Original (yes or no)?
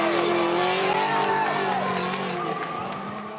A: yes